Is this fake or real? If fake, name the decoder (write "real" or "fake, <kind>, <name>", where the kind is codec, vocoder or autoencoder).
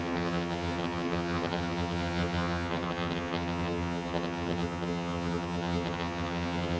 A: fake, vocoder, HiFi-GAN